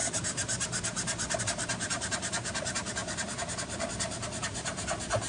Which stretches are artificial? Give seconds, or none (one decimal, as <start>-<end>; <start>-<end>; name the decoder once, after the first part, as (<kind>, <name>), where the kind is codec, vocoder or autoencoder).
0.0-5.3 (vocoder, BigVGAN v2)